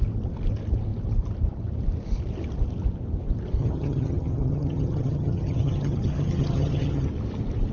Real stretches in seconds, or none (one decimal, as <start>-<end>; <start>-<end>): 0.0-3.6; 7.1-7.7